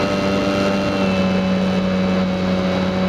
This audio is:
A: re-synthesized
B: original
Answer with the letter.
B